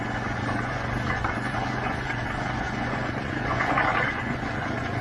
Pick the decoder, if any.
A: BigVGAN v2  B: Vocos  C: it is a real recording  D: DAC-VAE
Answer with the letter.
B